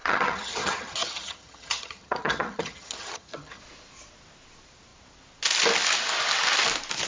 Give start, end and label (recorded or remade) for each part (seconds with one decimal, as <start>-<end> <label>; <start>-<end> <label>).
0.0-3.6 remade; 3.6-7.1 recorded